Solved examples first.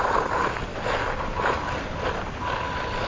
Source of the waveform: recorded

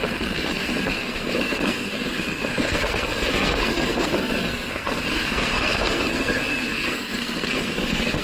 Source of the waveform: remade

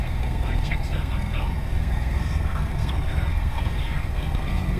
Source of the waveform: remade